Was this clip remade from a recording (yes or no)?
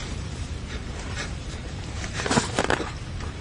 yes